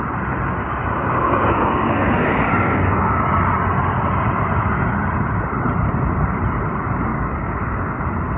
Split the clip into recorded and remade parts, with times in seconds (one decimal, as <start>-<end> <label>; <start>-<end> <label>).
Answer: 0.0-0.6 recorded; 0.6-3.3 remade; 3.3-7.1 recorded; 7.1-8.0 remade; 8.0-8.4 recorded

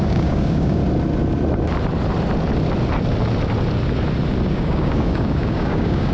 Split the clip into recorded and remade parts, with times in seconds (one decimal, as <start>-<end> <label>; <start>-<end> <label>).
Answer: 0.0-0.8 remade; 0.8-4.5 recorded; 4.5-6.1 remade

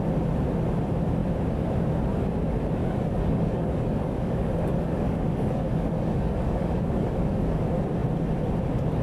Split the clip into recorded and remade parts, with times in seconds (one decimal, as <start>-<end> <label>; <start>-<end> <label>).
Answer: 0.0-2.8 recorded; 2.8-7.6 remade; 7.6-9.0 recorded

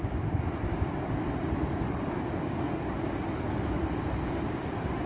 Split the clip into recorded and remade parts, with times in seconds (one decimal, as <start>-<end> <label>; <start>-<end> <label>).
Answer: 0.0-1.7 recorded; 1.7-3.8 remade; 3.8-5.1 recorded

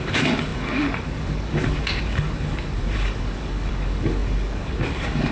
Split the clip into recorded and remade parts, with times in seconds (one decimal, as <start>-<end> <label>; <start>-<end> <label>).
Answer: 0.0-5.3 remade

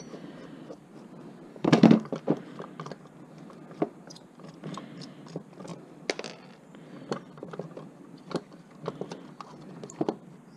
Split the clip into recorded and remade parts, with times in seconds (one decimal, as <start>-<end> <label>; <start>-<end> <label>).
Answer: 0.0-1.5 recorded; 1.5-2.1 remade; 2.1-10.6 recorded

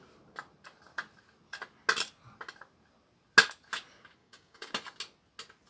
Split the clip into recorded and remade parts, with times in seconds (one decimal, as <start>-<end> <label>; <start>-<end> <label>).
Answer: 0.0-4.2 recorded; 4.2-4.7 remade; 4.7-5.7 recorded

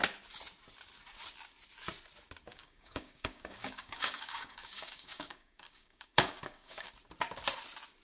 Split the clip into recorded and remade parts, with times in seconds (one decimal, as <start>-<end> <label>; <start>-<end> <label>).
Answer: 0.0-2.5 recorded; 2.5-6.9 remade; 6.9-8.0 recorded